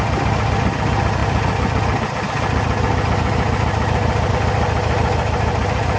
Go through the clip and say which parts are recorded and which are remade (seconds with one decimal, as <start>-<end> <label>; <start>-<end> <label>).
0.0-6.0 recorded